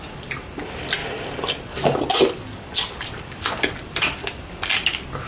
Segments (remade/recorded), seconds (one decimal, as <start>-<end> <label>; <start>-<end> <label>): 0.0-5.3 recorded